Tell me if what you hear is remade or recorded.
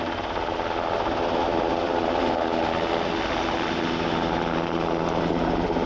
recorded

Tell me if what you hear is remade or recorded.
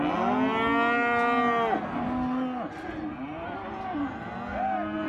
recorded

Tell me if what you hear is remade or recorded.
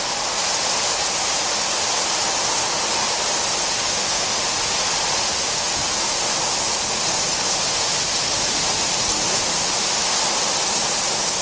recorded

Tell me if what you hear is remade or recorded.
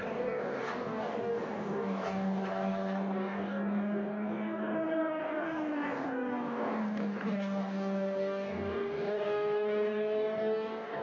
remade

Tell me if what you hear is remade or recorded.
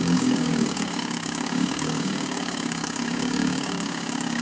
remade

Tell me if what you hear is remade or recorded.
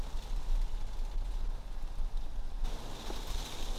recorded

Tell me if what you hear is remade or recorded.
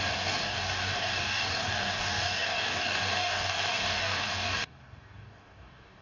remade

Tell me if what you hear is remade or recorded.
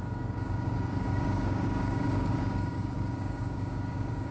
remade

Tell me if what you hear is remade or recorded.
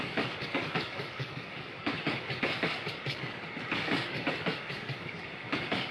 remade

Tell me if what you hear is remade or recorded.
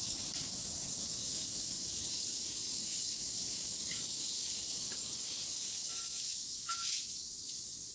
remade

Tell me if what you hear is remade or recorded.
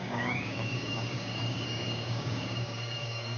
remade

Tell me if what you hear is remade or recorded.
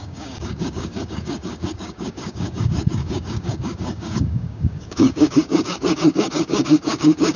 remade